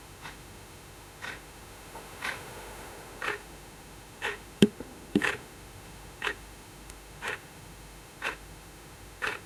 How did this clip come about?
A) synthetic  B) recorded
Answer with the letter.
A